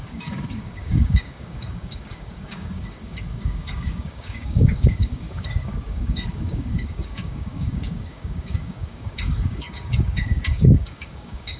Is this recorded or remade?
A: remade